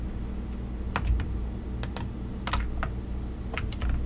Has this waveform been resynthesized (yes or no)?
no